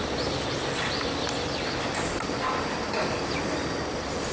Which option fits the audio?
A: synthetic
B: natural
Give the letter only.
B